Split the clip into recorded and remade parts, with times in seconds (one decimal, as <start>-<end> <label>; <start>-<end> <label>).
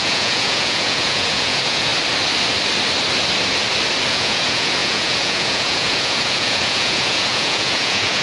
0.0-1.9 remade; 1.9-4.1 recorded; 4.1-8.2 remade